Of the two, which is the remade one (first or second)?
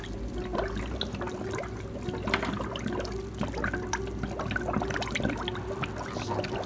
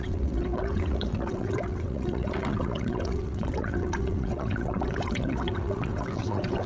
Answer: second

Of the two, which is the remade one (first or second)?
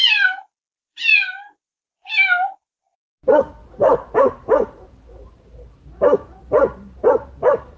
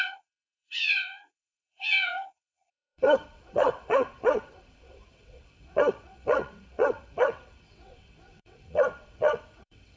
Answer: second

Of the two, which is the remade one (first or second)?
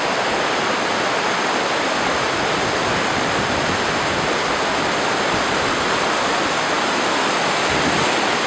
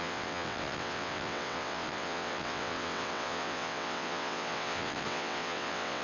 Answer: second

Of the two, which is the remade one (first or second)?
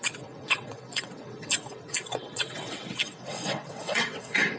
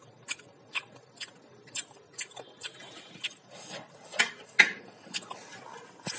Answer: first